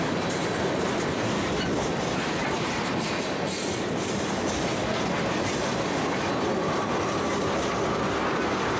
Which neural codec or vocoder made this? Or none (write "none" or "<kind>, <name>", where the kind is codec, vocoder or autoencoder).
none